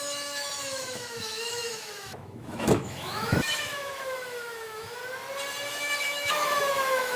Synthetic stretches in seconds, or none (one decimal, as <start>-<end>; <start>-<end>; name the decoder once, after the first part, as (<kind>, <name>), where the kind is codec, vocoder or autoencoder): 0.0-5.0 (autoencoder, DAC-VAE); 5.7-7.2